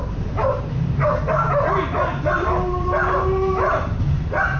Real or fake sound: fake